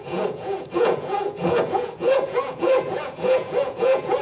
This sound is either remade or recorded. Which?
remade